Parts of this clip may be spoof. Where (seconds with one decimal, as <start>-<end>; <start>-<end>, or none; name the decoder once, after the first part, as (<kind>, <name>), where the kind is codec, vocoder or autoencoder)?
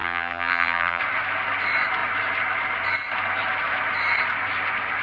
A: 0.0-1.0 (vocoder, BigVGAN v2)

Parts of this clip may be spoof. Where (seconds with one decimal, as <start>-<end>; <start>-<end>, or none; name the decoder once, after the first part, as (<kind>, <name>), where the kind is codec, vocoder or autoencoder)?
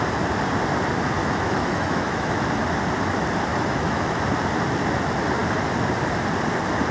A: 1.2-2.3 (autoencoder, DAC-VAE); 3.5-4.2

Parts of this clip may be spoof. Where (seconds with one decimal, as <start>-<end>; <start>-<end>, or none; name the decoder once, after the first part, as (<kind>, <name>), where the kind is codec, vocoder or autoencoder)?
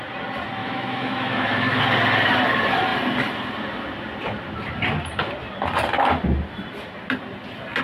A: 0.6-1.8 (autoencoder, DAC-VAE)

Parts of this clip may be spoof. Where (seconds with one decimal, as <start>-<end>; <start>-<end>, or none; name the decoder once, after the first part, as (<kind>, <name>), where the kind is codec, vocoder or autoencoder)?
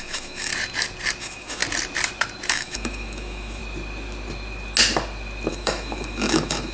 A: 0.0-0.5 (autoencoder, DAC-VAE); 1.2-1.6; 2.5-3.6; 5.5-6.7